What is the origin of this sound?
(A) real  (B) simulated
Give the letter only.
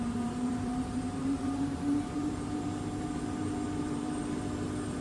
B